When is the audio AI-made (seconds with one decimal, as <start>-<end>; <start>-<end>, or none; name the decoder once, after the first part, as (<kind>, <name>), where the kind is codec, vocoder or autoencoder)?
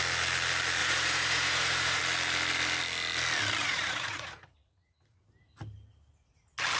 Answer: 0.8-2.0 (vocoder, Vocos); 3.6-5.2